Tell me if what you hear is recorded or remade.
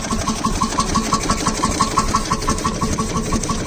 recorded